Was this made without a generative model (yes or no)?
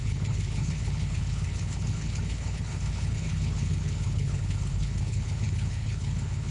no